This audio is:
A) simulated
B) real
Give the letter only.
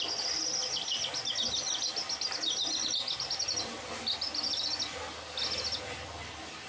B